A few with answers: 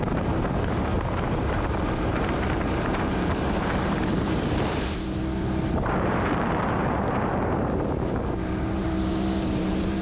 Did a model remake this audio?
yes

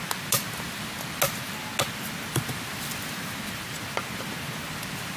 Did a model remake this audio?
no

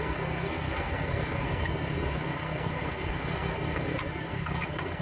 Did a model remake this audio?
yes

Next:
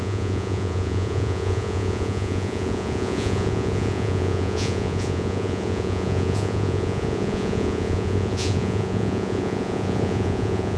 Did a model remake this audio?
yes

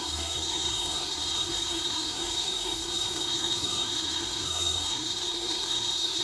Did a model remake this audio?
yes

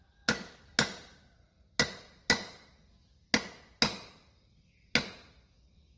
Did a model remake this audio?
no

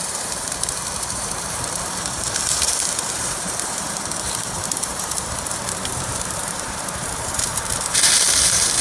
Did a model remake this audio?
yes